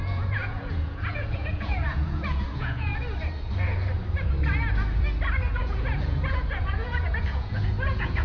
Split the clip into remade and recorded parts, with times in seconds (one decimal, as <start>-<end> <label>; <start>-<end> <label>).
0.0-2.9 remade; 2.9-5.5 recorded; 5.5-8.2 remade